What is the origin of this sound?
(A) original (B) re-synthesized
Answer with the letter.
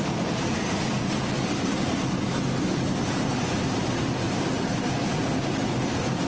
A